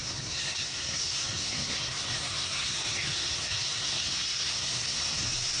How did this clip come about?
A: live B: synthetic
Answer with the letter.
B